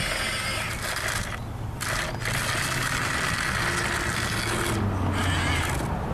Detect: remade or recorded recorded